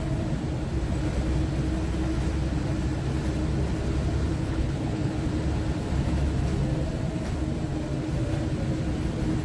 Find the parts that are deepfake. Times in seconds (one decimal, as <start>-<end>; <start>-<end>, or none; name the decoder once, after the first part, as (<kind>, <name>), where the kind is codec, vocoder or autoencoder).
4.3-5.3 (codec, HILCodec)

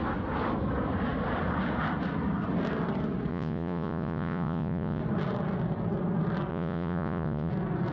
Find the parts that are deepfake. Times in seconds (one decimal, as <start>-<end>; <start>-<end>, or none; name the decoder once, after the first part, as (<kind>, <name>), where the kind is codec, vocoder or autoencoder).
3.3-5.0 (vocoder, Vocos); 6.5-7.5

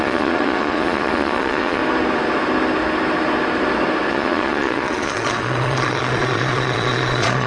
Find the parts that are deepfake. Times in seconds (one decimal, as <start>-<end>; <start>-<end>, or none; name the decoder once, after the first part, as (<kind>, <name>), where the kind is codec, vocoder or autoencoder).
0.0-1.8 (vocoder, Vocos); 4.1-7.5

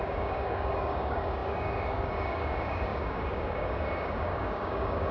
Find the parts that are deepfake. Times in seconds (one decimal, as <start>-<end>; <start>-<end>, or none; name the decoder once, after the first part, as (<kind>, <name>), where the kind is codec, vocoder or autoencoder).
0.0-5.1 (codec, DAC)